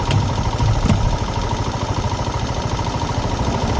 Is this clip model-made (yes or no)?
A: no